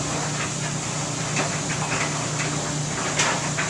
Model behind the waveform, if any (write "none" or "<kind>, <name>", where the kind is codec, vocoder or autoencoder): none